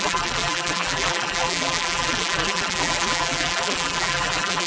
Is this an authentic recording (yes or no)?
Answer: no